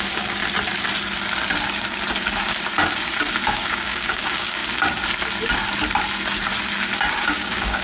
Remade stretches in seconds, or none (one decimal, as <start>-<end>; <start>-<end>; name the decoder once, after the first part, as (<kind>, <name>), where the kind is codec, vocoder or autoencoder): 0.0-0.4 (codec, DAC); 3.5-4.6; 7.1-7.8